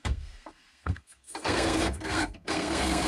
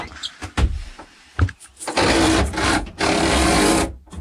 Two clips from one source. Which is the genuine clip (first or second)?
second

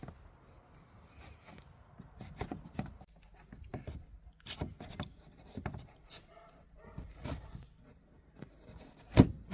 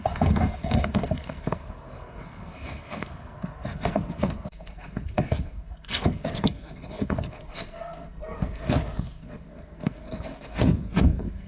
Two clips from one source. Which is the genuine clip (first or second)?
first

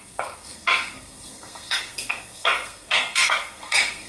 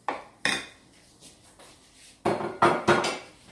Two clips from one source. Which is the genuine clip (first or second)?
second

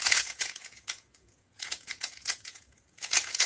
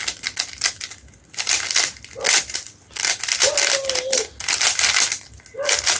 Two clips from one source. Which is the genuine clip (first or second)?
second